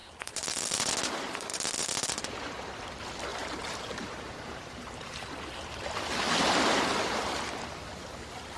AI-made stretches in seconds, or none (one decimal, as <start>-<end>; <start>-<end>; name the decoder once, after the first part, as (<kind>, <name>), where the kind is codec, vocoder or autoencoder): 0.0-0.9 (vocoder, BigVGAN v2); 3.3-5.3